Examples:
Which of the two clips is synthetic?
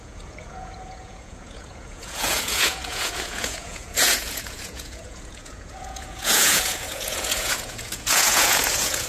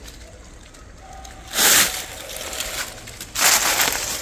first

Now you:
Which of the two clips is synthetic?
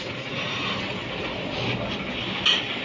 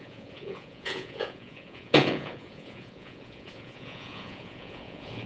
second